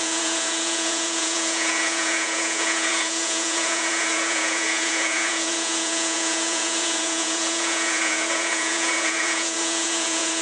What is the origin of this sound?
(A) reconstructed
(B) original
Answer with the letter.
A